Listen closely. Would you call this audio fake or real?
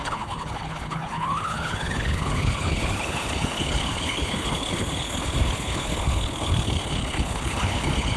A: fake